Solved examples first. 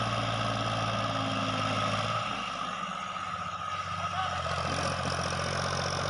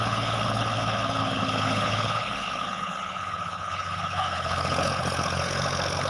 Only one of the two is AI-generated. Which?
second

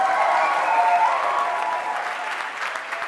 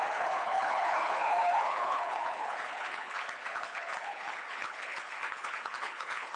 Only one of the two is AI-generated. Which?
second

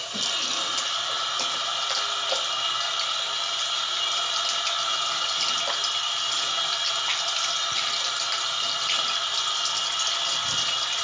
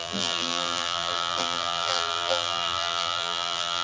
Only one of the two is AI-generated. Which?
second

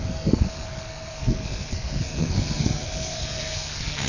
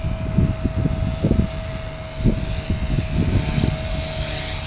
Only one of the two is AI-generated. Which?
first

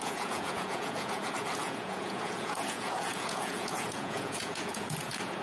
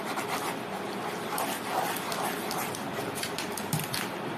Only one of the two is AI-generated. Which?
first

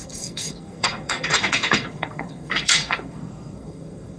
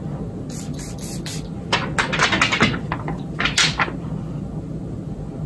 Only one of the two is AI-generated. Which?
first